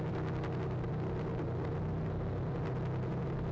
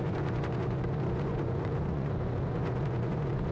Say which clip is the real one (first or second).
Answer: first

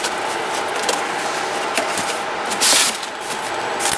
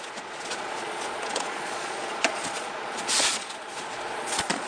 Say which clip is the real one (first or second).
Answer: first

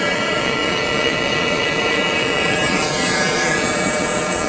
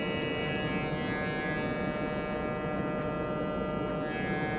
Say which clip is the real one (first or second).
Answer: second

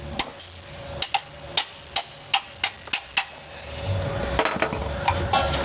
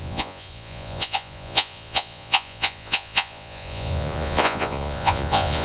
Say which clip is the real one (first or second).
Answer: first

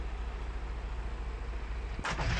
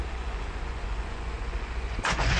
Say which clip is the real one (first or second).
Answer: first